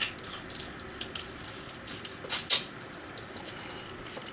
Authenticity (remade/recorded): recorded